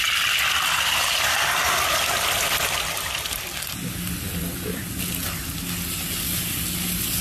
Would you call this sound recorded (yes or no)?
yes